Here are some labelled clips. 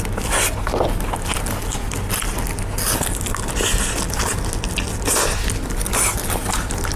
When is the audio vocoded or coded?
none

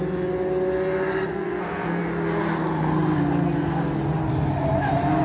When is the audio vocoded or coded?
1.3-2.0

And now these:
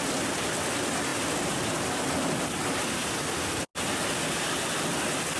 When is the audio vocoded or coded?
none

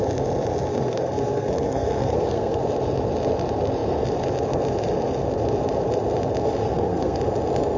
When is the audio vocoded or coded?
0.7-2.6; 6.6-7.2